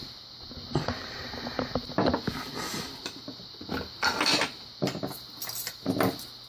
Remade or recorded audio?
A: recorded